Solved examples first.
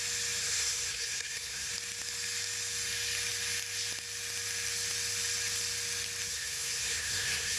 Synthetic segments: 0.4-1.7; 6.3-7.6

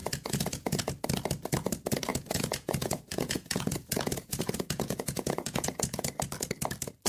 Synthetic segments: 0.0-0.9; 2.1-6.1

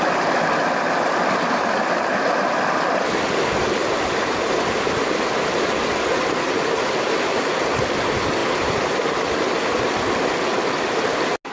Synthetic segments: none